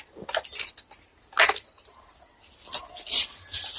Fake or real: real